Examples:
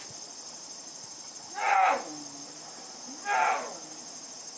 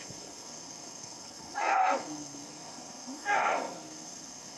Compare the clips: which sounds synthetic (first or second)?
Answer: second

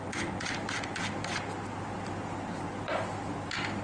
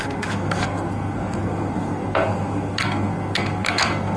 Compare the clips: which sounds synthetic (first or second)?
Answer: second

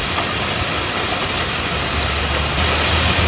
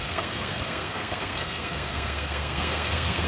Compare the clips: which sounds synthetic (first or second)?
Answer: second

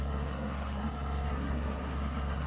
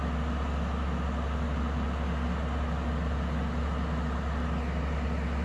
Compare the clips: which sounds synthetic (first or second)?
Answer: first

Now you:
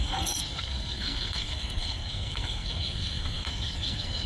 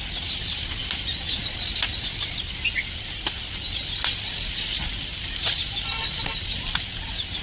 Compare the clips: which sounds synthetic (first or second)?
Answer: first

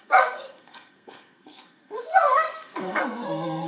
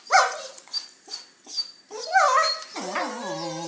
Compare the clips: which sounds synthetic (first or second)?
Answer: first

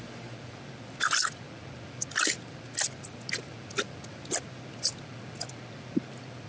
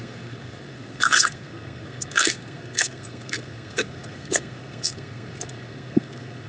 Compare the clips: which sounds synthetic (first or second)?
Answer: second